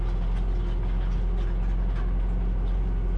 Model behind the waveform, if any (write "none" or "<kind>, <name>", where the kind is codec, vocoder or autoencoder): none